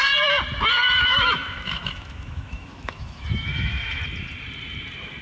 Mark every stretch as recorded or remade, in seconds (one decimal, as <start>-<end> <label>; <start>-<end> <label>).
0.0-1.1 recorded; 1.1-4.0 remade; 4.0-5.2 recorded